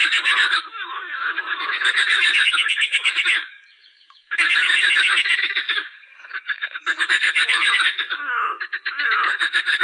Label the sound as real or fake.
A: fake